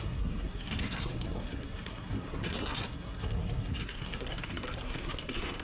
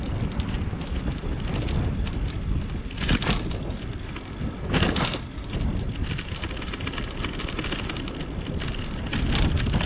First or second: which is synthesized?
first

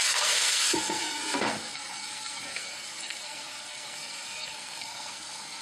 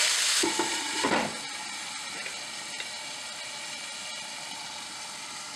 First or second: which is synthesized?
first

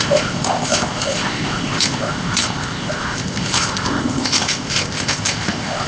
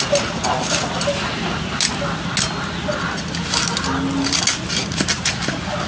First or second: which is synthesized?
first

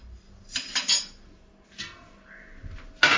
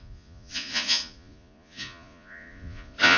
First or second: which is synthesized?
second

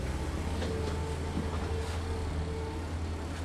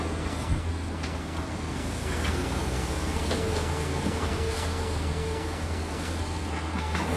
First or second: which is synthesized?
second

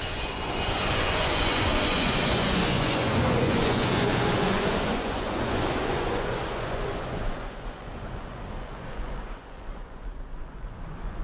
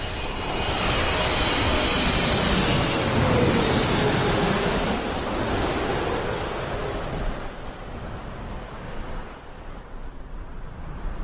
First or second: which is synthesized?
first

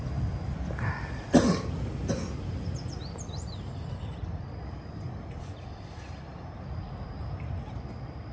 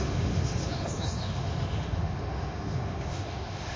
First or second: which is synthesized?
second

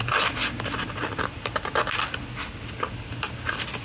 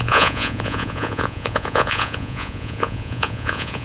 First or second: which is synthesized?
second